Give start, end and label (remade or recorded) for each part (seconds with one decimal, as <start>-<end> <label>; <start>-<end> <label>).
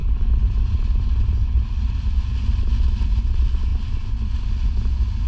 0.0-2.5 remade; 2.5-5.3 recorded